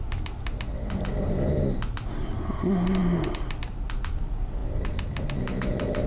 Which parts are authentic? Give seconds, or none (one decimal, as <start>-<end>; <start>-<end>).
0.0-6.1